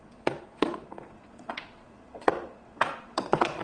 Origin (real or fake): fake